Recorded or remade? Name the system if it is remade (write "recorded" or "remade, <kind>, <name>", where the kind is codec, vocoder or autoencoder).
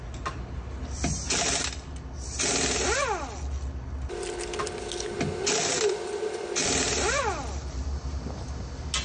recorded